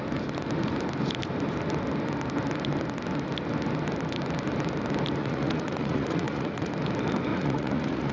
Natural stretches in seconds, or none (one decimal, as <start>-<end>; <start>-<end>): 0.0-5.2; 6.7-7.3